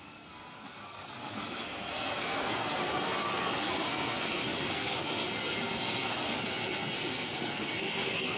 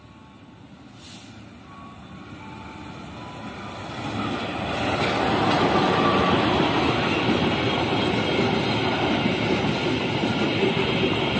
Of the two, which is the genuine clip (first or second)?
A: second